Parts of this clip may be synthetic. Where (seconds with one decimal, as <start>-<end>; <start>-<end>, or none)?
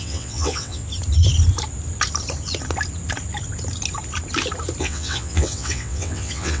0.0-0.8; 4.8-6.6